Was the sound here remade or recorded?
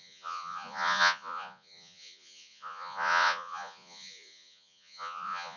remade